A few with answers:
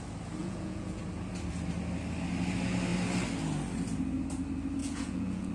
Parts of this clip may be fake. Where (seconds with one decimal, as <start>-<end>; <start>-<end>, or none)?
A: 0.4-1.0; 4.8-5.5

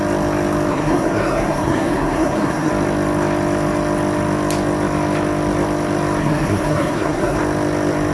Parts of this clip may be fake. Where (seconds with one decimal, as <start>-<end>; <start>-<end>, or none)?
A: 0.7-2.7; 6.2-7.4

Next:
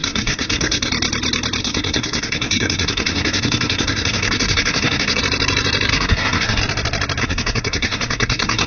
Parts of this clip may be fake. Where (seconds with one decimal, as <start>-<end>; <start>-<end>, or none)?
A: 0.0-0.9; 1.6-5.2; 5.9-6.6; 7.2-8.7

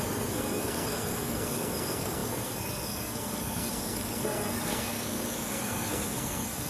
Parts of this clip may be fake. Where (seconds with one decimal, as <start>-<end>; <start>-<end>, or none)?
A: 0.0-6.7

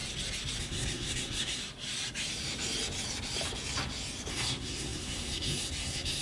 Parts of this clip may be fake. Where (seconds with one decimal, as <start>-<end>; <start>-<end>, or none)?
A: 0.6-1.6; 4.3-6.2

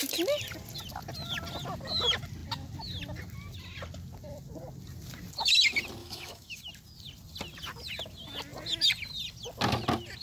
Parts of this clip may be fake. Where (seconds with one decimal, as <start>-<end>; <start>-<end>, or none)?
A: 6.0-6.7

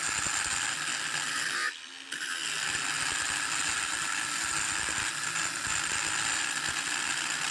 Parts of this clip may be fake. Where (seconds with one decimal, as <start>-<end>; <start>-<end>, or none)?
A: none